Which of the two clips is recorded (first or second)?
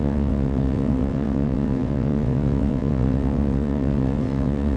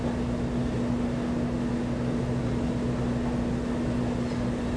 second